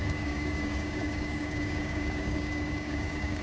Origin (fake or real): fake